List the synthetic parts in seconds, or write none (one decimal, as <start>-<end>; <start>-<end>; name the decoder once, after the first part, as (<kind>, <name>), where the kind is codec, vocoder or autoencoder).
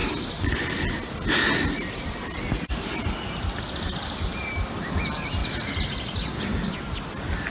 0.0-4.5 (vocoder, BigVGAN v2)